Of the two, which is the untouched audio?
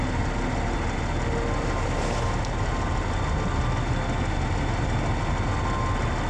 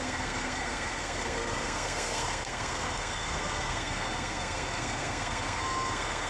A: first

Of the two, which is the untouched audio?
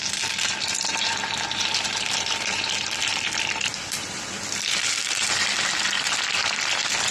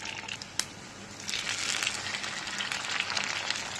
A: second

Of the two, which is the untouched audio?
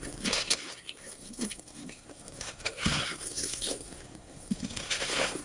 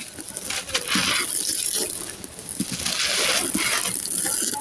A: second